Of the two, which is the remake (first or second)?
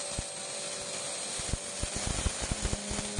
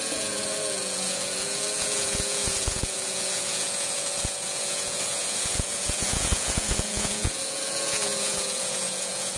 second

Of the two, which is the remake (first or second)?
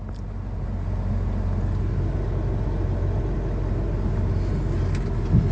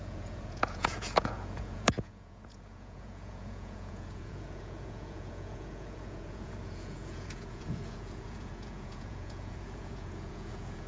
second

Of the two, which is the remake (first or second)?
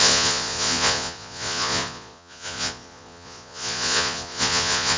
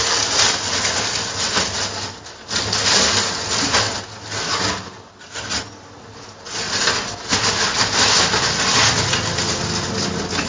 first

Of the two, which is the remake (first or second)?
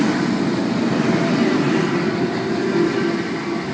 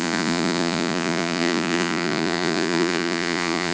second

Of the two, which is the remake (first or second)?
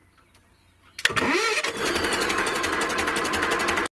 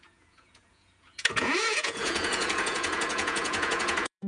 second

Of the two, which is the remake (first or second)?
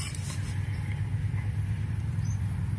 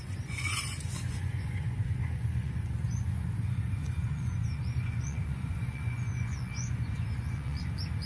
second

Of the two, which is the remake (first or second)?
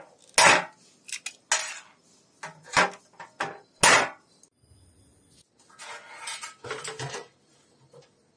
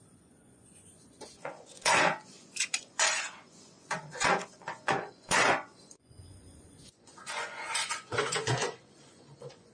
second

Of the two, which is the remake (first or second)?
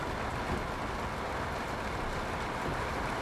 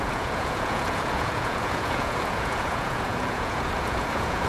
second